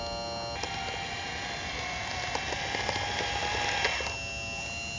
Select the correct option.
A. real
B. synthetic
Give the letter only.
A